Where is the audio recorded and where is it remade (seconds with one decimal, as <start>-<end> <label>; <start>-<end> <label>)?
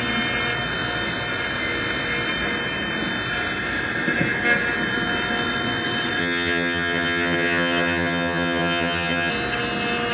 0.0-6.2 recorded; 6.2-9.3 remade; 9.3-10.1 recorded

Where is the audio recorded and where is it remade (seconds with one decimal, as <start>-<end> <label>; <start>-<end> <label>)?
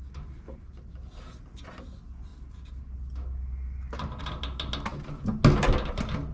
0.0-6.3 recorded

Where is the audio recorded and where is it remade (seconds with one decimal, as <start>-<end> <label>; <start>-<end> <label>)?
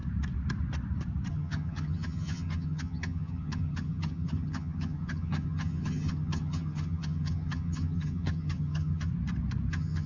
0.0-1.3 recorded; 1.3-9.1 remade; 9.1-9.7 recorded; 9.7-10.1 remade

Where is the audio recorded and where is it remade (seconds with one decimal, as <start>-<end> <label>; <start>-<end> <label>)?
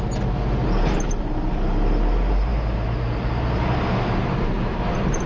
0.0-5.3 recorded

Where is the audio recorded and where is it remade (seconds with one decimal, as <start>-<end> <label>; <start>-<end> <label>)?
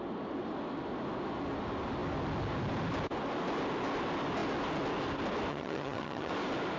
0.0-5.5 recorded; 5.5-6.3 remade; 6.3-6.8 recorded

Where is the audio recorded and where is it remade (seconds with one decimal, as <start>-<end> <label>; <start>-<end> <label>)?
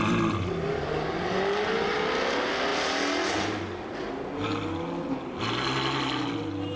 0.0-6.8 recorded